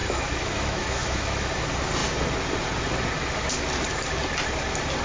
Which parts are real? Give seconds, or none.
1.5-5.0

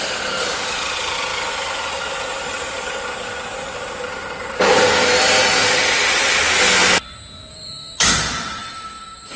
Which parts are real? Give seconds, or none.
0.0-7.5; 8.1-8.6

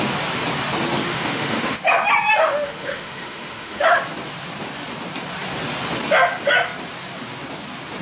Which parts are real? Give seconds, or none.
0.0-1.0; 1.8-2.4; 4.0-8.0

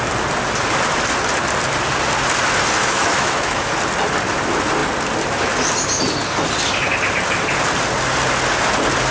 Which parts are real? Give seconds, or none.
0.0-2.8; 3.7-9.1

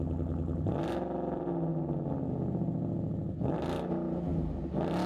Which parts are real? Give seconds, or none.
0.0-5.1

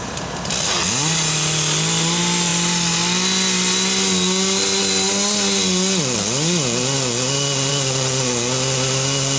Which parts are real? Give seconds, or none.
0.0-9.4

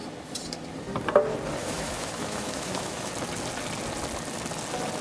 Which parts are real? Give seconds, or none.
0.0-1.6; 3.1-5.0

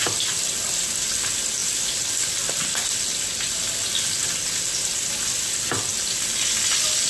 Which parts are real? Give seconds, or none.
0.0-7.1